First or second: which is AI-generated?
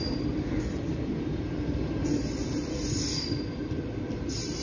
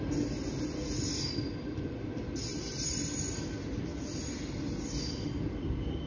first